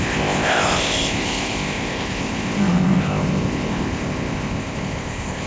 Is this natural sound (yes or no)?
no